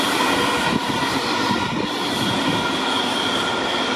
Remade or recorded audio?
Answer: recorded